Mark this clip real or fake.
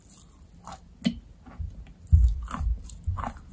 real